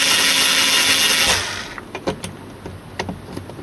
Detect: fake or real real